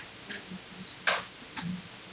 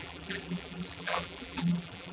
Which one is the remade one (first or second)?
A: second